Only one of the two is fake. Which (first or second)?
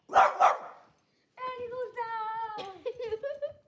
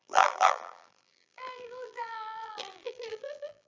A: second